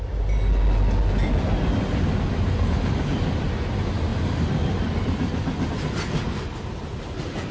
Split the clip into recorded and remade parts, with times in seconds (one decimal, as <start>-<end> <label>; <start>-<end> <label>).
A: 0.0-7.5 recorded